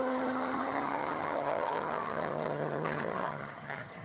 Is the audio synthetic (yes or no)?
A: yes